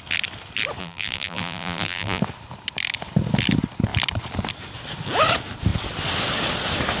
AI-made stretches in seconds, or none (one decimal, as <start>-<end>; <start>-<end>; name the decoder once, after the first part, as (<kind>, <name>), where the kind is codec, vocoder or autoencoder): 0.8-2.2 (vocoder, BigVGAN v2)